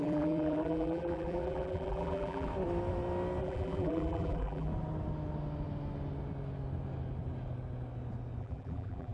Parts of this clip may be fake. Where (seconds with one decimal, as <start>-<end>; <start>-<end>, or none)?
0.0-2.5; 3.4-4.7; 8.4-9.1